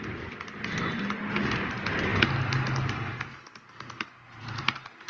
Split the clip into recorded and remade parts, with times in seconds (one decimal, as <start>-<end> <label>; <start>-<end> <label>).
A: 0.0-5.1 recorded